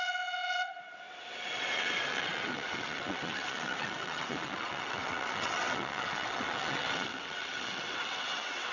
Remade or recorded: remade